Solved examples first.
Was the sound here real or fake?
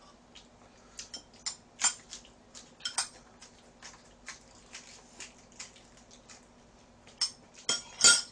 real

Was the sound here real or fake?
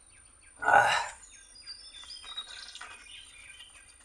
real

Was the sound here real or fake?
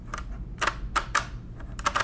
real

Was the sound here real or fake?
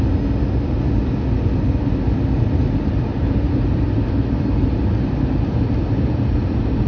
real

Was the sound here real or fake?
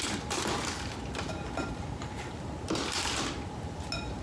real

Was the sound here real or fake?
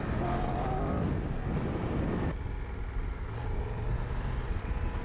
real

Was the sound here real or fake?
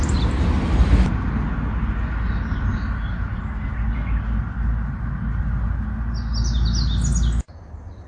real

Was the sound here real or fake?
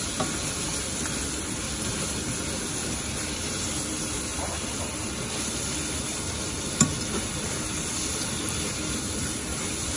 real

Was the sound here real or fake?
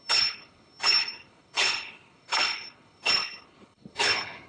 fake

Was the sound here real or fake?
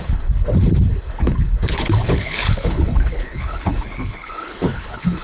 fake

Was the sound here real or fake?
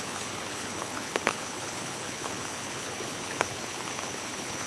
fake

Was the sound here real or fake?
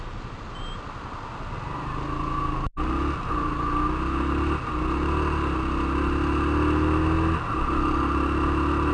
real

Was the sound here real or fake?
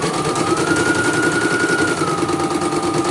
real